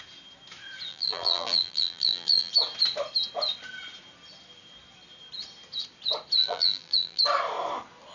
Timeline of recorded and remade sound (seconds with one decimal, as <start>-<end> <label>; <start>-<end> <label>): 0.0-0.9 recorded; 0.9-2.5 remade; 2.5-6.4 recorded; 6.4-7.2 remade; 7.2-8.1 recorded